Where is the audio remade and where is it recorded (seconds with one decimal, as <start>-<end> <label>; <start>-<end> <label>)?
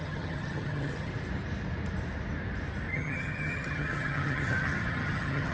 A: 0.0-1.1 remade; 1.1-2.9 recorded; 2.9-5.5 remade